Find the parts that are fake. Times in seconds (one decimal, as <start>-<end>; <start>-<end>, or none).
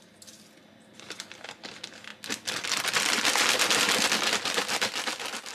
none